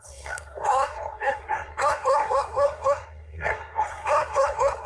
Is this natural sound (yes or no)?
no